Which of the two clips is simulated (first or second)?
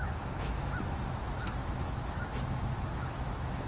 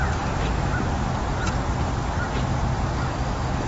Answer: first